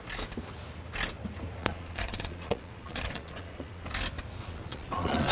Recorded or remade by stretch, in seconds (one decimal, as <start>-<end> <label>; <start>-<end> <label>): 0.0-1.6 recorded; 1.6-3.9 remade; 3.9-4.4 recorded; 4.4-5.3 remade